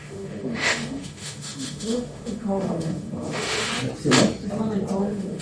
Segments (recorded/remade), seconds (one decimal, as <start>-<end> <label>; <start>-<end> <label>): 0.0-3.7 remade; 3.7-5.0 recorded; 5.0-5.4 remade